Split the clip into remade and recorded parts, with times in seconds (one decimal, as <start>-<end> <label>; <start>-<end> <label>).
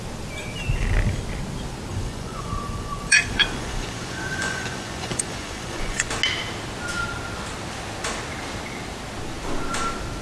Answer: 0.0-1.9 recorded; 1.9-6.1 remade; 6.1-10.2 recorded